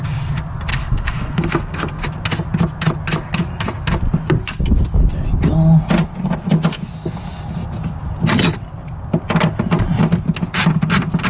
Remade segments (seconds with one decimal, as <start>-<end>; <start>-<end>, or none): 0.7-2.0